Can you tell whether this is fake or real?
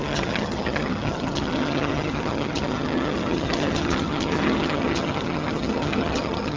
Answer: fake